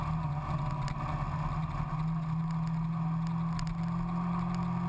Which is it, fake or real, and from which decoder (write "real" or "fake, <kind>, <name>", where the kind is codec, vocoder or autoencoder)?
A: real